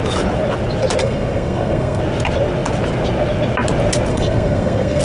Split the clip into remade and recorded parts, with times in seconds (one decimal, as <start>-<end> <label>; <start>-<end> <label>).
0.0-1.0 recorded; 1.0-2.0 remade; 2.0-4.1 recorded; 4.1-5.0 remade